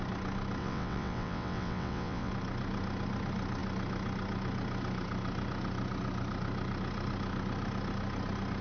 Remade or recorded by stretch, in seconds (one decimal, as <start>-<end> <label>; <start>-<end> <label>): 0.0-0.6 recorded; 0.6-2.3 remade; 2.3-8.6 recorded